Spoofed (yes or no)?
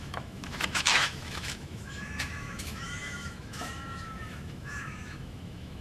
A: yes